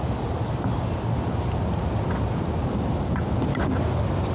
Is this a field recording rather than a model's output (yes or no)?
yes